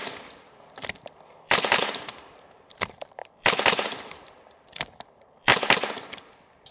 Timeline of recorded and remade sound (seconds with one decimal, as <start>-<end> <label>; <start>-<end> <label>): 0.0-5.5 remade; 5.5-6.7 recorded